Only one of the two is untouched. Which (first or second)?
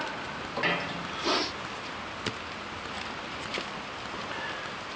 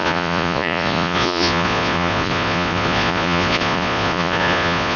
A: first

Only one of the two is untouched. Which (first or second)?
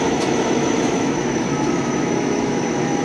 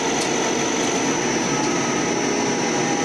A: second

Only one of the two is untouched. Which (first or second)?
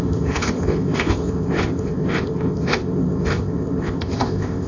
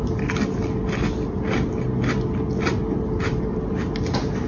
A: second